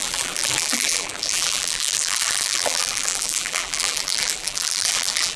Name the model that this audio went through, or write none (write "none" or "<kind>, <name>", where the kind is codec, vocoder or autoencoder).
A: vocoder, BigVGAN v2